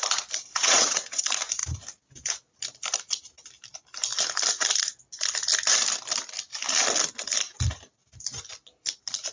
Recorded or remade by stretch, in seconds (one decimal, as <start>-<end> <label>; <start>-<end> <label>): 0.0-0.5 recorded; 0.5-1.2 remade; 1.2-9.3 recorded